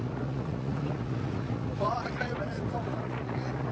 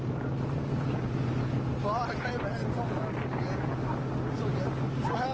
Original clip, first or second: second